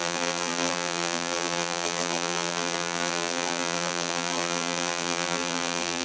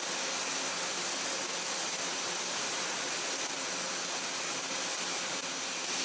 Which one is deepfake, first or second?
first